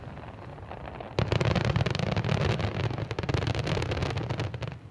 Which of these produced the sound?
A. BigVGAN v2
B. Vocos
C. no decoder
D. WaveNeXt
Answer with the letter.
C